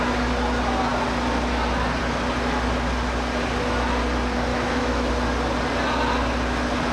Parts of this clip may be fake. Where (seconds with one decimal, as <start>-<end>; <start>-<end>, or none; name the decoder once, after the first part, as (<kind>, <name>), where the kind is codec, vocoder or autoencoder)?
4.5-5.1 (autoencoder, DAC-VAE)